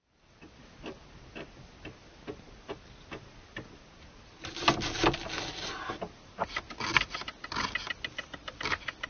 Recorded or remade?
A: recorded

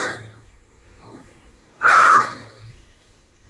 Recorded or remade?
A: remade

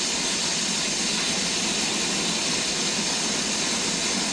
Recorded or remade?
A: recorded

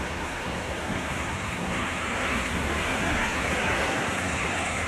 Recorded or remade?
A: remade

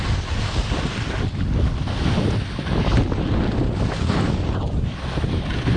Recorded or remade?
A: recorded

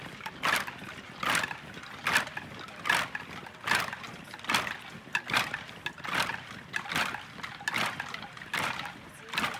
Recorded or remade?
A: recorded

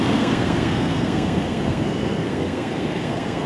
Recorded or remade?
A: remade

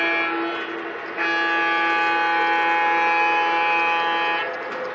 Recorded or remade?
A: recorded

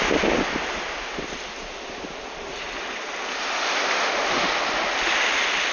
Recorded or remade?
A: recorded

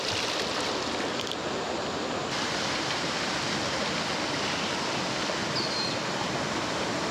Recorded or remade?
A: recorded